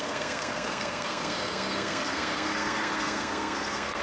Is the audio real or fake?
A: fake